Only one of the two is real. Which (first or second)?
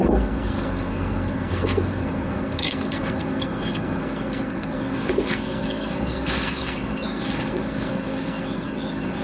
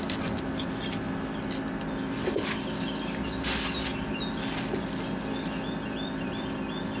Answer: second